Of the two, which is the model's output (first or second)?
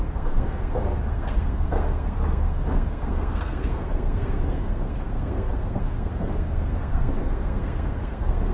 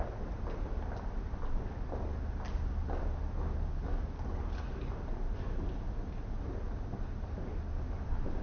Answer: first